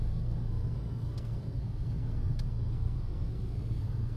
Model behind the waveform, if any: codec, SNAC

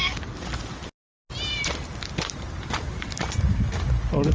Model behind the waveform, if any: none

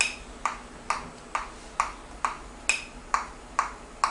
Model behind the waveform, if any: none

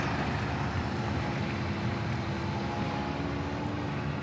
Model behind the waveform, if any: none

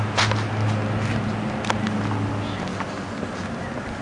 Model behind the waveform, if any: none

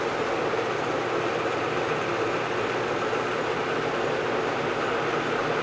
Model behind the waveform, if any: none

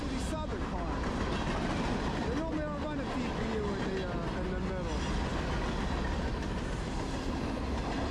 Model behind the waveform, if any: none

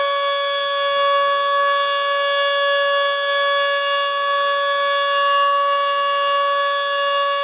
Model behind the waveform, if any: none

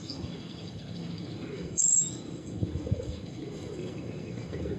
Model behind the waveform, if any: codec, SNAC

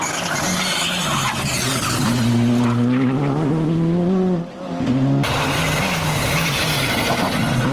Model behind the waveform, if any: none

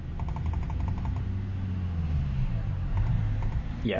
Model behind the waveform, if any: none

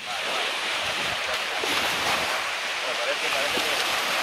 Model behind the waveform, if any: vocoder, BigVGAN v2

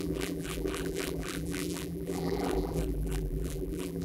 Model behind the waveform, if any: vocoder, BigVGAN v2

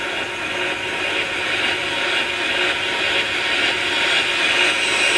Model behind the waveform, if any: none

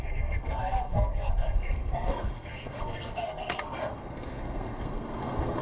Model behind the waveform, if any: codec, SNAC